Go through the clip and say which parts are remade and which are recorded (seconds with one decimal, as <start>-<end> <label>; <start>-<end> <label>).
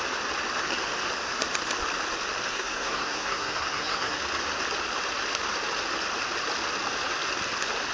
0.0-2.5 recorded; 2.5-4.2 remade; 4.2-7.9 recorded